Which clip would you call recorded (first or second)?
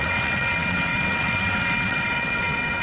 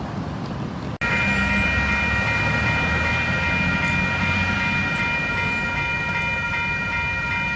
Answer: second